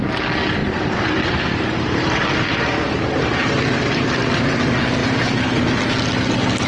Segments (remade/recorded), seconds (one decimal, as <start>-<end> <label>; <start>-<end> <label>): 0.0-0.6 recorded; 0.6-4.6 remade; 4.6-5.0 recorded; 5.0-5.6 remade; 5.6-6.7 recorded